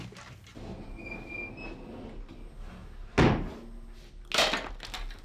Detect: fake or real real